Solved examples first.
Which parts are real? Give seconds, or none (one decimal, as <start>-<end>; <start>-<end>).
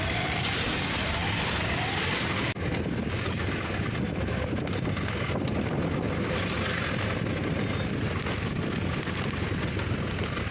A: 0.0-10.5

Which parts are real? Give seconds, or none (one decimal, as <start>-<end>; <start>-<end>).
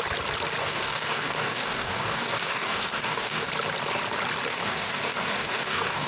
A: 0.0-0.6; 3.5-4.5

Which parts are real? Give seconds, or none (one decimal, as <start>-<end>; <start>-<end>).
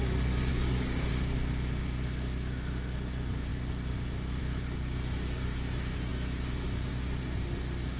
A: 0.0-0.5; 1.1-8.0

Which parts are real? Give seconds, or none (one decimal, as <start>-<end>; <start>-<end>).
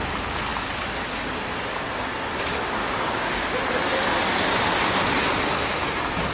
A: 0.0-2.8; 3.6-6.3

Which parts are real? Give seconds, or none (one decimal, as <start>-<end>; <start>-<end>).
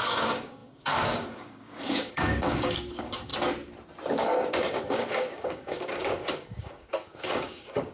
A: 3.3-4.1